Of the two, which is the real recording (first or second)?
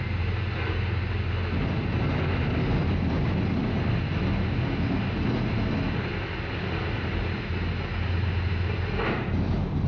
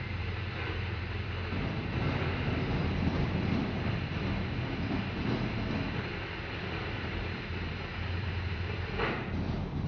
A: first